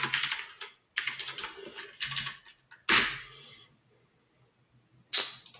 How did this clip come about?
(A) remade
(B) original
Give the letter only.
B